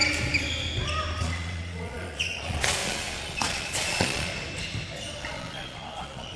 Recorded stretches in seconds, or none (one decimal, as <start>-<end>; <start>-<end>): 0.0-1.2; 4.3-5.2